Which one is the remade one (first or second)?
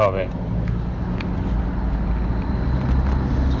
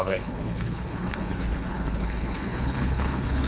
second